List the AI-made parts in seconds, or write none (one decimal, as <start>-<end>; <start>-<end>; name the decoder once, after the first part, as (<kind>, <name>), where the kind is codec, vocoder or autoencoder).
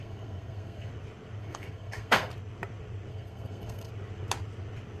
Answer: 0.0-0.9 (codec, SNAC); 1.4-2.3; 3.1-3.9